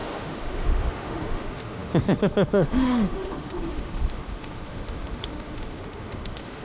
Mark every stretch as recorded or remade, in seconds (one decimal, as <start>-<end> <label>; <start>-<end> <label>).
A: 0.0-6.6 remade